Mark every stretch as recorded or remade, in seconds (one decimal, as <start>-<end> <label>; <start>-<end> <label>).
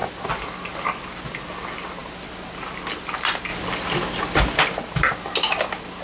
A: 0.0-6.0 recorded